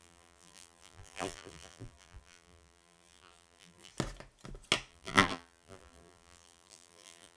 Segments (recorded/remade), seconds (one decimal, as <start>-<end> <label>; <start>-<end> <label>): 0.0-3.9 remade; 3.9-4.9 recorded; 4.9-7.4 remade